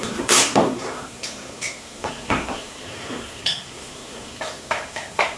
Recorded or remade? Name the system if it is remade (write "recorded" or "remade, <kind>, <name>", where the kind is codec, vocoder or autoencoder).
remade, codec, SNAC